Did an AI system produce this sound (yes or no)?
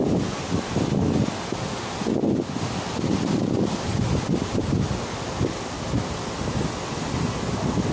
no